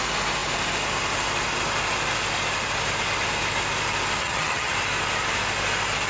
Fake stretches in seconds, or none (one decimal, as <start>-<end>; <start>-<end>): 4.2-4.7